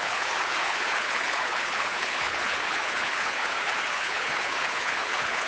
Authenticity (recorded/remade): remade